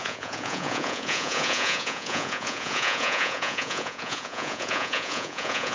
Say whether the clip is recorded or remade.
remade